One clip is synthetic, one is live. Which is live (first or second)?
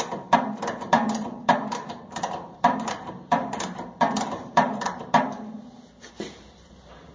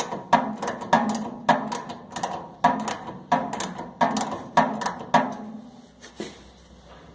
second